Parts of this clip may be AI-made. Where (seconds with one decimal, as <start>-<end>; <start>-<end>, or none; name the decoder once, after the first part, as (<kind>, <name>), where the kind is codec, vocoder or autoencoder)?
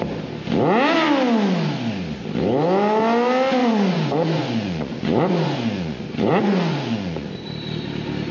3.6-7.3 (vocoder, Vocos)